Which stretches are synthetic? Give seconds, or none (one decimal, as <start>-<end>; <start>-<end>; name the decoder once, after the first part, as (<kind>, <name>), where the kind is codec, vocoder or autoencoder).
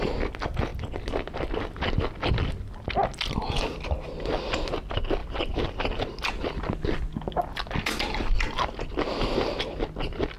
5.2-5.7 (vocoder, BigVGAN v2)